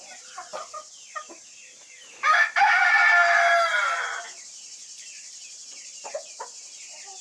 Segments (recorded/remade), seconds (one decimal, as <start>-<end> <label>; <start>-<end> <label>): 0.0-0.5 remade; 0.5-1.1 recorded; 1.1-3.0 remade; 3.0-4.2 recorded; 4.2-7.2 remade